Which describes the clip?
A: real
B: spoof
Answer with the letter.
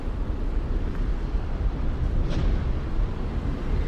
A